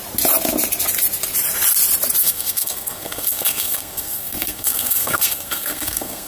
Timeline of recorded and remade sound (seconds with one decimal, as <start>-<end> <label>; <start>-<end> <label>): 0.0-2.2 recorded; 2.2-6.3 remade